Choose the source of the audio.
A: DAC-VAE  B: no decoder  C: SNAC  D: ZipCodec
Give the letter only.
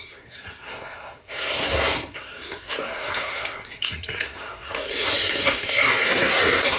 C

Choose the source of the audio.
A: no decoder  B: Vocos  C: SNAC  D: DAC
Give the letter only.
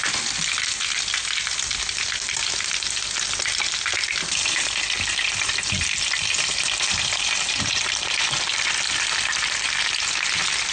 A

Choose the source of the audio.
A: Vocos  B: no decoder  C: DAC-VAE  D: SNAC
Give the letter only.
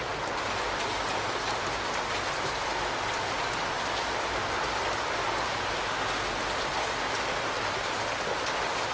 B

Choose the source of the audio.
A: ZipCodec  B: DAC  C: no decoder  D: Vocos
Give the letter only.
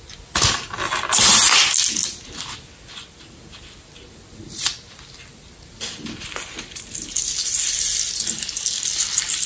C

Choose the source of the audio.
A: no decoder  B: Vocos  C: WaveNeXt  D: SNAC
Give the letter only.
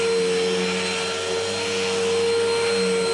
A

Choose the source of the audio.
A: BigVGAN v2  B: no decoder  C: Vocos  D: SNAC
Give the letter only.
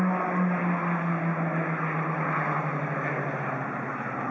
B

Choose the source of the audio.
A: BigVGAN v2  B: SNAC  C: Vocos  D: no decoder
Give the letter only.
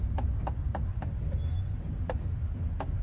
D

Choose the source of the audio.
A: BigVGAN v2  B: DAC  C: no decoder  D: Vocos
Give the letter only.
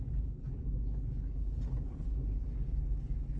B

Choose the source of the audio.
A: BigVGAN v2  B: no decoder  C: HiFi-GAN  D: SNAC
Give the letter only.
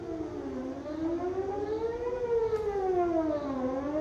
B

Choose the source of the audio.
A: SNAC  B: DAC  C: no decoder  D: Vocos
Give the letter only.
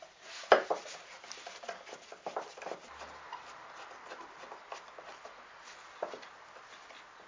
C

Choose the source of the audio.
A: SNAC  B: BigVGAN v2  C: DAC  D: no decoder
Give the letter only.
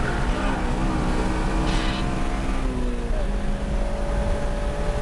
D